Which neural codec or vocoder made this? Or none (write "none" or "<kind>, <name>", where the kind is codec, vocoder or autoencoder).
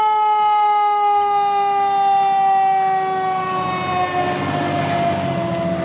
none